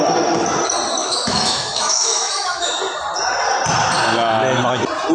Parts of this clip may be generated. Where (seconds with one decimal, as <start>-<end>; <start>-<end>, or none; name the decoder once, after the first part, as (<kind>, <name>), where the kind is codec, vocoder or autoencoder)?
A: 1.0-2.8 (autoencoder, DAC-VAE)